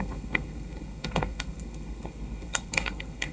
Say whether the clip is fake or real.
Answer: fake